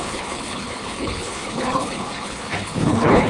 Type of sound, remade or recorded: remade